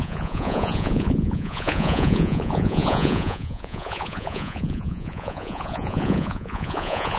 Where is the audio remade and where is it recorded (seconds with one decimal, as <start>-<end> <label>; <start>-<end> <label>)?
0.0-7.2 remade